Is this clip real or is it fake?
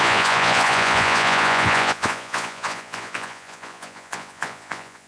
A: fake